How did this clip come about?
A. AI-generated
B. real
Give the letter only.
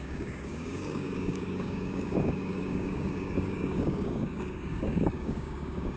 A